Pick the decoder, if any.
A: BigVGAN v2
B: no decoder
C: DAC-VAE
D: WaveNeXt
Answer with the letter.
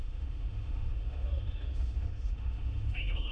C